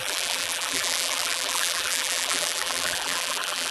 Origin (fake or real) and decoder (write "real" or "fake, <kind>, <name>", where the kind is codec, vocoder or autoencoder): fake, vocoder, BigVGAN v2